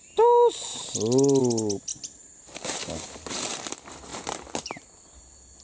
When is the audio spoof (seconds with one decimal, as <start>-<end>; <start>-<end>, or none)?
0.7-1.4; 1.9-3.3; 4.1-5.0